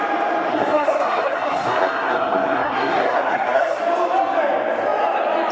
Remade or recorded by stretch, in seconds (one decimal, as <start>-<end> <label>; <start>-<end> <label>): 0.0-0.5 recorded; 0.5-3.8 remade; 3.8-5.5 recorded